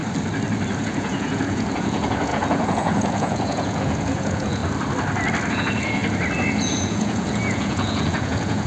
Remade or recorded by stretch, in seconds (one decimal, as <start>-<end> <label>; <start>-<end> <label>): 0.0-0.8 recorded; 0.8-4.6 remade; 4.6-5.5 recorded; 5.5-6.0 remade; 6.0-6.5 recorded; 6.5-8.7 remade